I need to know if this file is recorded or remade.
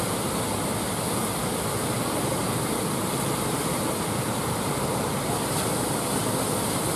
recorded